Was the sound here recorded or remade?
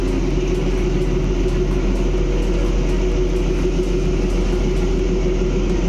recorded